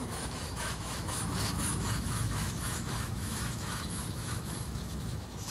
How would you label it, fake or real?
fake